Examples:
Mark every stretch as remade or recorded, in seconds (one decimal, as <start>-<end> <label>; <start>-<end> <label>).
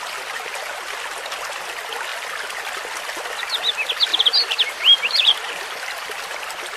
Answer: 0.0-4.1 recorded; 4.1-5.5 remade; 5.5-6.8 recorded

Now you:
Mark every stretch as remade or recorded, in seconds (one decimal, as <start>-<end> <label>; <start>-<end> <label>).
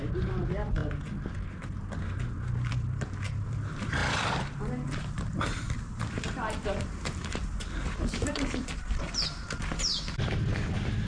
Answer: 0.0-0.8 remade; 0.8-2.7 recorded; 2.7-11.1 remade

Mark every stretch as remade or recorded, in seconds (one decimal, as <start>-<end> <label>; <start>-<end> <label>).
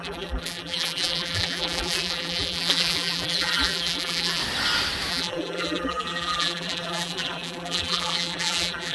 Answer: 0.0-4.4 remade; 4.4-5.1 recorded; 5.1-8.9 remade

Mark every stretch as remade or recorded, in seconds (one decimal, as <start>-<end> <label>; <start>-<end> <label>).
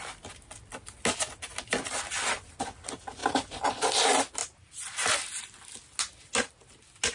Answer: 0.0-3.2 recorded; 3.2-3.7 remade; 3.7-7.1 recorded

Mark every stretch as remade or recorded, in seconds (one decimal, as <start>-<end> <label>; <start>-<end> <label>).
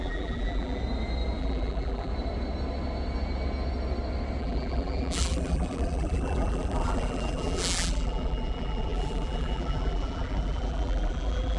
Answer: 0.0-0.8 remade; 0.8-1.4 recorded; 1.4-2.1 remade; 2.1-4.4 recorded; 4.4-11.6 remade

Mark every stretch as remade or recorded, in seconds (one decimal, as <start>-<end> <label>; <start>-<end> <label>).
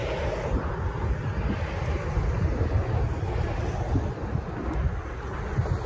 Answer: 0.0-0.7 remade; 0.7-5.9 recorded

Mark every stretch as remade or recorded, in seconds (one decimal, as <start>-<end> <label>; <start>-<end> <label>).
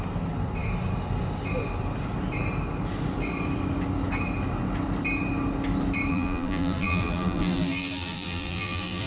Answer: 0.0-6.1 recorded; 6.1-9.1 remade